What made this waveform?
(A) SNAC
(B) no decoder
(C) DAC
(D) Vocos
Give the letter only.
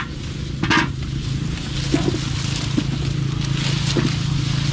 B